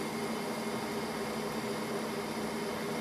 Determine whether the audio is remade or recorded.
recorded